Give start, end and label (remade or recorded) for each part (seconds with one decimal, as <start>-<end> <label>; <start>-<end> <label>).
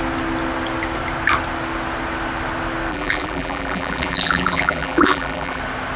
0.0-2.9 recorded; 2.9-5.6 remade; 5.6-6.0 recorded